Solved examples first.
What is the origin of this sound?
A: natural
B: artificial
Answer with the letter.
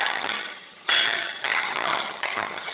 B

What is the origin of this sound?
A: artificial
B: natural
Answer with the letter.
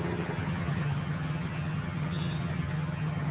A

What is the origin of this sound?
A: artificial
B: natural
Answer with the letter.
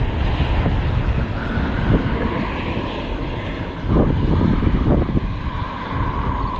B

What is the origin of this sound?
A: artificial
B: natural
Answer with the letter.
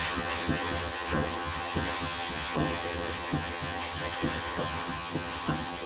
A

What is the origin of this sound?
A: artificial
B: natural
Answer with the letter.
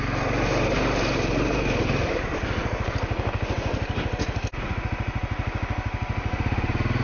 B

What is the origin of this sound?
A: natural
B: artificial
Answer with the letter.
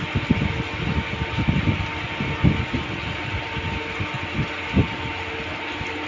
A